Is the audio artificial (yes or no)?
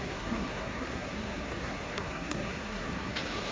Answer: yes